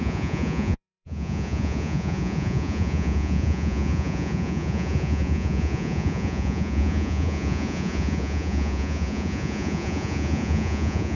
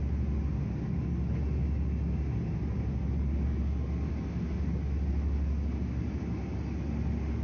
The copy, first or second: first